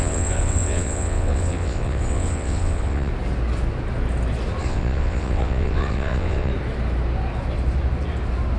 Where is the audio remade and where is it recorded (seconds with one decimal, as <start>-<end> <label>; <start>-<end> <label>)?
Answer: 0.0-3.1 remade; 3.1-4.6 recorded; 4.6-6.5 remade; 6.5-8.6 recorded